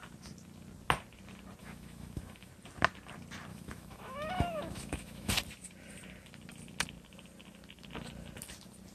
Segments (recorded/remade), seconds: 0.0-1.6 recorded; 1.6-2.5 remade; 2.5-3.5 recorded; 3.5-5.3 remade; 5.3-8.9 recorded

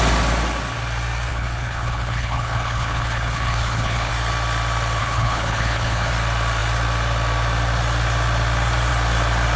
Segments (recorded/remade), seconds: 0.0-1.3 recorded; 1.3-4.1 remade; 4.1-5.0 recorded; 5.0-6.1 remade; 6.1-9.6 recorded

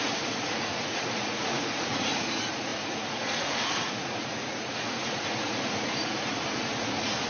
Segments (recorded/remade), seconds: 0.0-7.3 remade